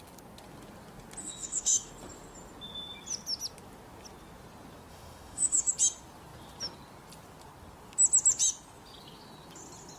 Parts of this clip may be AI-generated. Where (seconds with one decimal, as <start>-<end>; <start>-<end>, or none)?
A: 1.2-1.9; 4.9-5.7